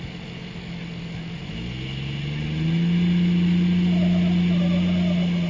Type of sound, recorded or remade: recorded